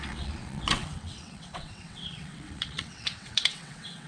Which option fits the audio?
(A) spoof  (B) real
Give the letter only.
A